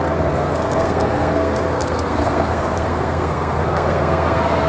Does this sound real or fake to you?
fake